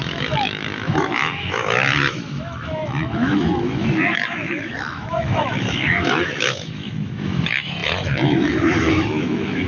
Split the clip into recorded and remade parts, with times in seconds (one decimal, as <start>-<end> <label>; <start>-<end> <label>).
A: 0.0-9.7 remade